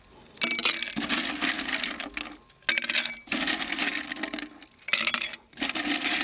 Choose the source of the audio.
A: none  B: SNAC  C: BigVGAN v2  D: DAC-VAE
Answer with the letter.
A